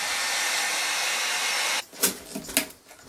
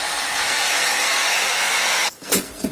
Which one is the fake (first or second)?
second